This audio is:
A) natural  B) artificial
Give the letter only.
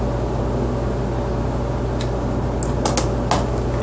A